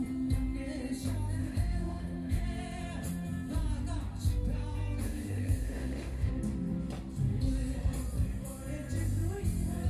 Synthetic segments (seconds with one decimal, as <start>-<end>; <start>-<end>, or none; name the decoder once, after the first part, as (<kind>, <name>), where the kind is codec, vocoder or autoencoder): 1.4-2.4 (autoencoder, DAC-VAE); 5.0-6.3

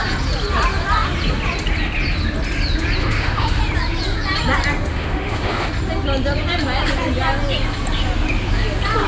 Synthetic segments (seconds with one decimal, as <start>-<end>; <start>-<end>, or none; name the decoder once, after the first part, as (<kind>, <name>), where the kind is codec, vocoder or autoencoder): 3.0-3.6 (autoencoder, DAC-VAE); 4.9-5.7

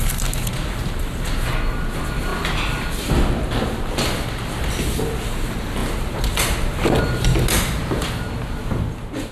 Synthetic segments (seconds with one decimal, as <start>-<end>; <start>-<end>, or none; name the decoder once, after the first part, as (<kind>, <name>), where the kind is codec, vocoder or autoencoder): none

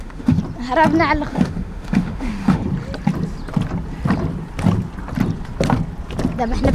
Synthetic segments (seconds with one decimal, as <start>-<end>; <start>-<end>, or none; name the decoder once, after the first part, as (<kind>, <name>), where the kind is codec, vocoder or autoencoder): 0.0-0.4 (autoencoder, DAC-VAE); 1.3-2.6

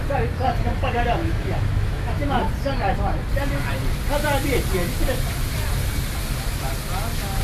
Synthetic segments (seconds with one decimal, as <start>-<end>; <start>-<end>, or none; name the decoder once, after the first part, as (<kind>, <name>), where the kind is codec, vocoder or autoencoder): 1.2-2.5 (autoencoder, DAC-VAE)

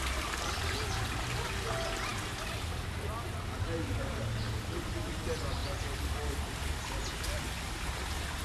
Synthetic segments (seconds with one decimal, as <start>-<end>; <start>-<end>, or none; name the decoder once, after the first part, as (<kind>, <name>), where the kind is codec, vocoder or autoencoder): none

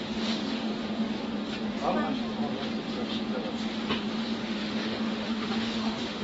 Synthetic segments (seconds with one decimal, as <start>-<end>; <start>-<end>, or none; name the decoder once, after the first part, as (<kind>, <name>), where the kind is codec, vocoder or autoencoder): 0.0-0.7 (autoencoder, DAC-VAE); 4.4-6.2